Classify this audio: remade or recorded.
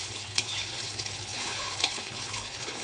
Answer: remade